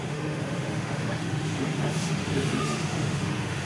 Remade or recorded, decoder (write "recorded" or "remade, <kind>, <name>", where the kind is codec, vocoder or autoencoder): remade, autoencoder, DAC-VAE